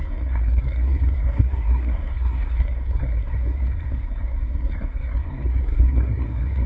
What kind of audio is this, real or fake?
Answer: fake